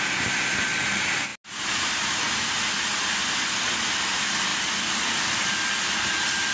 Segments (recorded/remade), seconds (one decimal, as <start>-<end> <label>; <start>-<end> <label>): 0.0-6.5 recorded

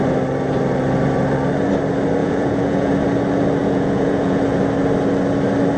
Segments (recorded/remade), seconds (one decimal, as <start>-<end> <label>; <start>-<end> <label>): 0.0-2.2 recorded; 2.2-2.9 remade; 2.9-3.6 recorded; 3.6-4.4 remade; 4.4-5.8 recorded